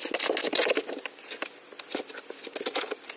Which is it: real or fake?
real